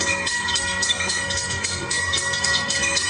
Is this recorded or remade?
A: remade